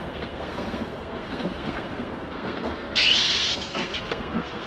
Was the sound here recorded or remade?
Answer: remade